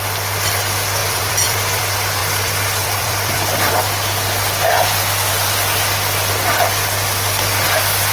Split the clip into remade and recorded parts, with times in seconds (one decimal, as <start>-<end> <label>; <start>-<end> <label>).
0.0-1.0 recorded; 1.0-1.8 remade; 1.8-2.2 recorded; 2.2-3.7 remade; 3.7-8.1 recorded